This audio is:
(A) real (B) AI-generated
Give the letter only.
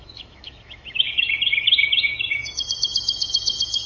B